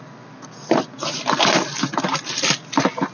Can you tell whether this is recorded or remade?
recorded